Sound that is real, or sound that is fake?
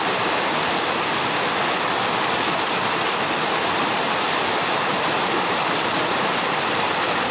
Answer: real